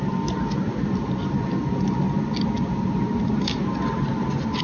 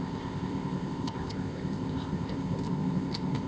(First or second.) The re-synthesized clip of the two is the second